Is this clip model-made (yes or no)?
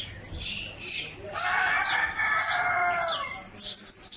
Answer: no